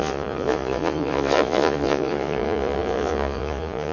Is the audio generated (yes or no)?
yes